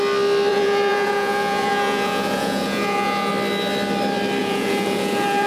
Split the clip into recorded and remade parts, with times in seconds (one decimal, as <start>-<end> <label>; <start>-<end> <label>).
0.0-0.5 recorded; 0.5-3.3 remade; 3.3-4.4 recorded; 4.4-5.5 remade